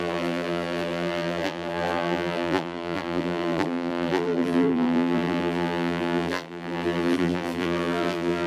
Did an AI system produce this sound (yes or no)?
yes